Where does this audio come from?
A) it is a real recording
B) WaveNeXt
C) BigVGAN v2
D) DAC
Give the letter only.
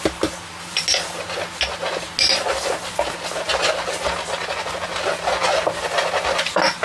A